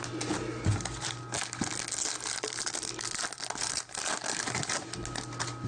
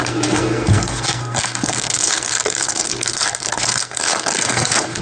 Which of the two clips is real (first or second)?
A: first